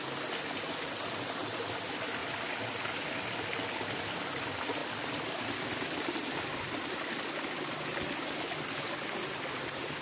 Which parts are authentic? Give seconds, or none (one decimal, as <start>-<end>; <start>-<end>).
0.0-10.0